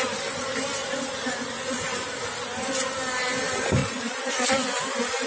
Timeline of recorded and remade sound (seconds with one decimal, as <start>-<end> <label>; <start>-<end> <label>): 0.0-0.8 recorded; 0.8-1.8 remade; 1.8-3.8 recorded; 3.8-4.3 remade; 4.3-5.3 recorded